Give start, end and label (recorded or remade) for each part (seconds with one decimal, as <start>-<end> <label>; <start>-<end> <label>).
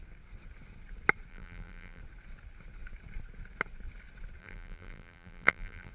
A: 0.0-1.3 recorded; 1.3-2.0 remade; 2.0-4.4 recorded; 4.4-5.9 remade